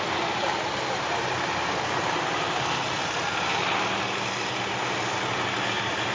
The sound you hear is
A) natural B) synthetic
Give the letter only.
A